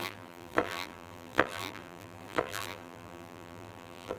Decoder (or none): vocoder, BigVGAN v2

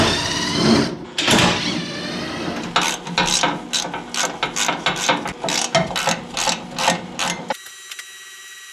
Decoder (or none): none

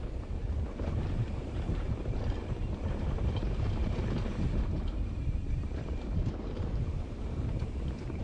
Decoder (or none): vocoder, BigVGAN v2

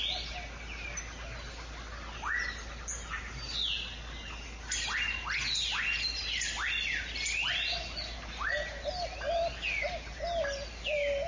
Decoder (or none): none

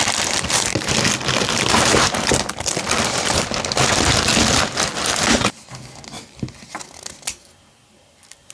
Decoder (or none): none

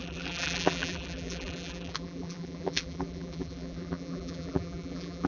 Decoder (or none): vocoder, BigVGAN v2